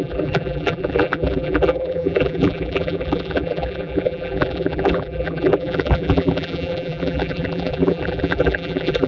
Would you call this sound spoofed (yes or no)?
yes